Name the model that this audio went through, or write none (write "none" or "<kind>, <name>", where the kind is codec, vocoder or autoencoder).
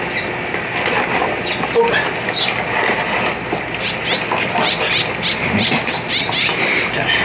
none